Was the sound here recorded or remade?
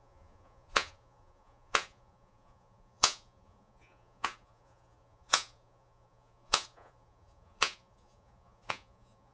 remade